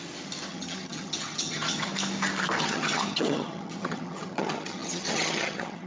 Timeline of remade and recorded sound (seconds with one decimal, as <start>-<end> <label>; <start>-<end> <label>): 0.0-0.5 recorded; 0.5-1.9 remade; 1.9-2.6 recorded; 2.6-5.9 remade